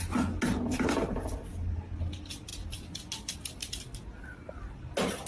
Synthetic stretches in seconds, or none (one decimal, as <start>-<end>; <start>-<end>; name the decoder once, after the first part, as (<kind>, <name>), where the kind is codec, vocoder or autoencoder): none